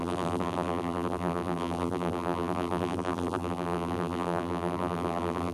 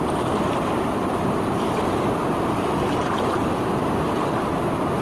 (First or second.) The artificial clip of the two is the first